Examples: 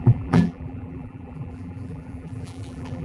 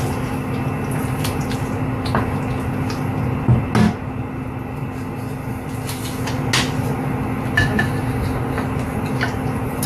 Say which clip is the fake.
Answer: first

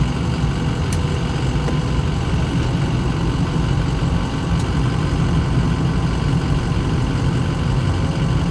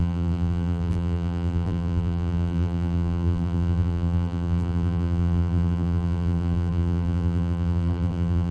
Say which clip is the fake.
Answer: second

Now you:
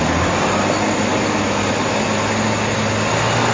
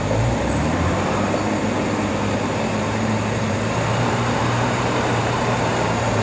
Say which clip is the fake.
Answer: second